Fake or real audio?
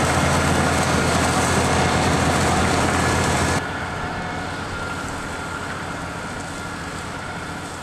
real